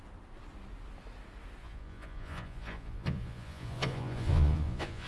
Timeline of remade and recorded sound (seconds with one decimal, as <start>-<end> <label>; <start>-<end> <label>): 0.0-1.6 recorded; 1.6-5.1 remade